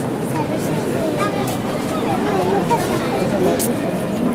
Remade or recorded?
recorded